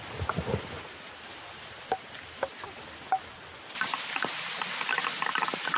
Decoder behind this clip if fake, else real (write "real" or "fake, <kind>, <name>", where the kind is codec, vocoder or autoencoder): real